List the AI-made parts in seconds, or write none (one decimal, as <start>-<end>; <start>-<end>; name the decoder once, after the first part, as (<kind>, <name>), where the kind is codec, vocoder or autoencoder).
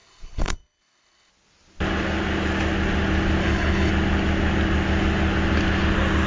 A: 0.0-1.3 (codec, HILCodec); 3.4-3.9